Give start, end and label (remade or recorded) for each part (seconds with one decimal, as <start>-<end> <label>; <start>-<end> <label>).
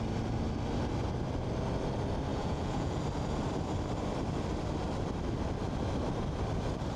0.0-2.3 recorded; 2.3-3.0 remade; 3.0-7.0 recorded